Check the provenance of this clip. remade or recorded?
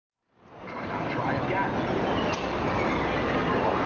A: recorded